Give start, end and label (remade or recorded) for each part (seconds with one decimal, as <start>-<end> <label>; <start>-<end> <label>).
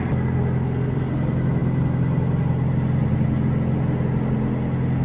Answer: 0.0-5.0 recorded